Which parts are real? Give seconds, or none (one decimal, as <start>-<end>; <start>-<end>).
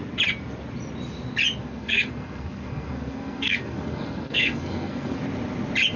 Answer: 0.0-1.6; 5.2-6.0